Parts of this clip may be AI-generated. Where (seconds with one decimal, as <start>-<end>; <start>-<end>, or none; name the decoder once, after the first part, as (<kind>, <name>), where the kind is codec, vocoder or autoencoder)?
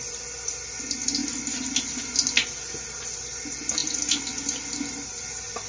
none